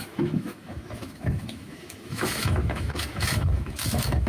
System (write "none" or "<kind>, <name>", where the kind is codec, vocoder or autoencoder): autoencoder, DAC-VAE